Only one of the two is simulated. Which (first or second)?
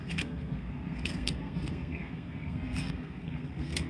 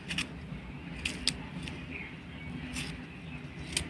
first